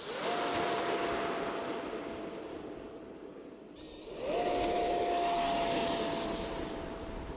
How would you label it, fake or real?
real